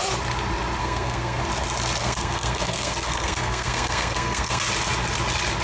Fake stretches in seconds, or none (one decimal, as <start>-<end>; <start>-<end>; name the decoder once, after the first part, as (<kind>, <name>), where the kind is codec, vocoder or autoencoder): 0.8-1.4 (codec, SNAC); 2.0-4.6